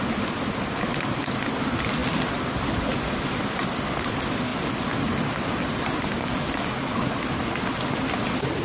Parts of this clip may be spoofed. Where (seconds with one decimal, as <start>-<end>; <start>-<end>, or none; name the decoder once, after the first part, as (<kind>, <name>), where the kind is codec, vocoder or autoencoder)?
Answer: none